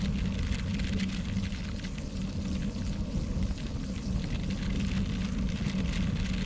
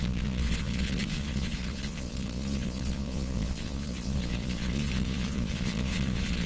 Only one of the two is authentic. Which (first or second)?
first